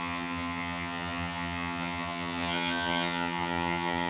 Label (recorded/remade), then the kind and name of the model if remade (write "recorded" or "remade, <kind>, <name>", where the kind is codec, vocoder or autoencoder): remade, vocoder, HiFi-GAN